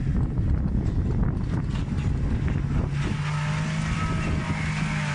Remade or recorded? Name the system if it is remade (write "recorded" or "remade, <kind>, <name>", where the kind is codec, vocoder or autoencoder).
recorded